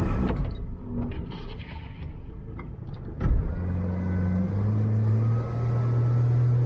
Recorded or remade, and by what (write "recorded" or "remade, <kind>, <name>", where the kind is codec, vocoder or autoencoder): recorded